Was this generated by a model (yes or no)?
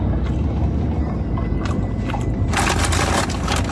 no